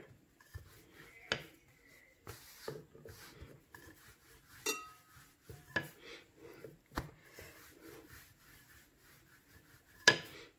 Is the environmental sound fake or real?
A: real